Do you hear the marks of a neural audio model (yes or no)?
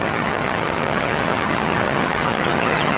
yes